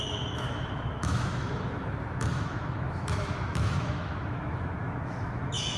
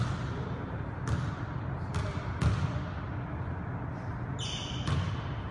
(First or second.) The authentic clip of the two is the second